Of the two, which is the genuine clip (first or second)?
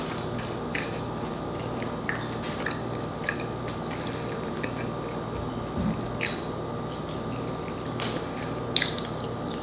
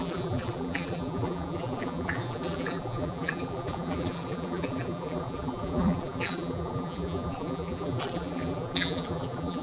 first